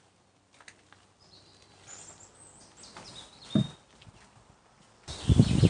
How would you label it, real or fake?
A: real